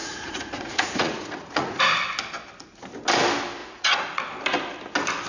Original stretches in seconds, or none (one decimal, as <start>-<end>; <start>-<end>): 1.8-3.6; 4.2-5.3